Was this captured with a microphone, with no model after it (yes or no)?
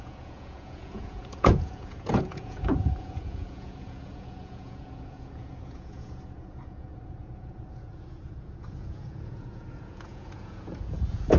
no